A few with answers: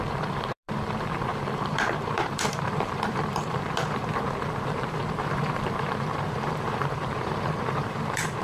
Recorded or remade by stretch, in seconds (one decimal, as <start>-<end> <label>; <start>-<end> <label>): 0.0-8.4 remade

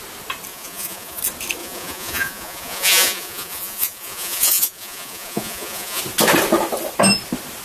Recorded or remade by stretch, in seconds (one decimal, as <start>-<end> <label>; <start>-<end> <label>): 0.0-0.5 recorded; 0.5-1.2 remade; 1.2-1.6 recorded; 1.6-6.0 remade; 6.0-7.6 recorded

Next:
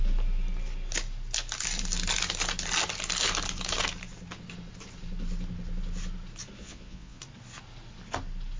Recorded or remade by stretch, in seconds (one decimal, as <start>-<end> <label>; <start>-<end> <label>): 0.0-6.6 recorded; 6.6-7.2 remade; 7.2-8.6 recorded

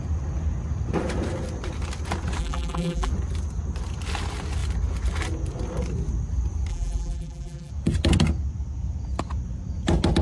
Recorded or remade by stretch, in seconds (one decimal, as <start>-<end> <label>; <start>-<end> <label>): 0.0-2.4 recorded; 2.4-3.1 remade; 3.1-6.7 recorded; 6.7-7.7 remade; 7.7-10.2 recorded

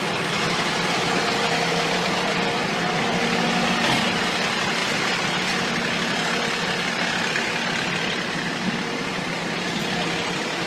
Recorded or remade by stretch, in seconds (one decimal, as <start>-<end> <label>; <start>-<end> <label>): 0.0-10.7 recorded

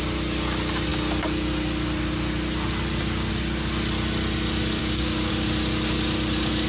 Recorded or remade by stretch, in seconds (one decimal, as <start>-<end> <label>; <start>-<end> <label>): 0.0-4.8 recorded; 4.8-5.3 remade; 5.3-6.7 recorded

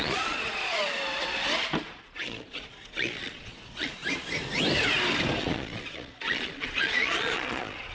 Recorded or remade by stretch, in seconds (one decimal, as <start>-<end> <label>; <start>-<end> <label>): 0.0-0.8 remade; 0.8-1.8 recorded; 1.8-4.0 remade; 4.0-5.4 recorded; 5.4-7.9 remade